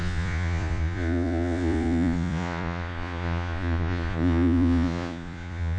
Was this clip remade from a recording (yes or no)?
yes